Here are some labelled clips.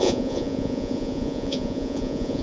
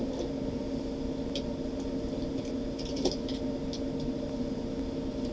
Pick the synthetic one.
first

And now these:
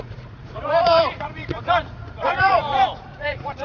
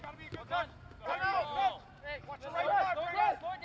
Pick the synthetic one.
first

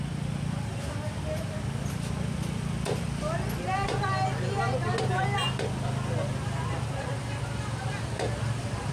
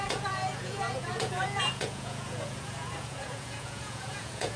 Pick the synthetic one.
second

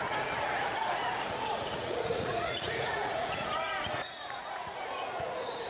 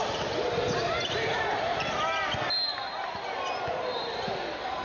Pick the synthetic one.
first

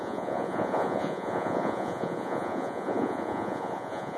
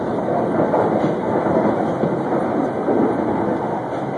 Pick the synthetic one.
first